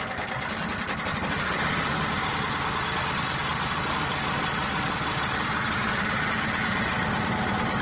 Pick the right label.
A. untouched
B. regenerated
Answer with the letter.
A